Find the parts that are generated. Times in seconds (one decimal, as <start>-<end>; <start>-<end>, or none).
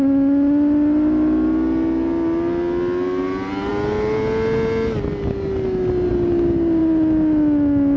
none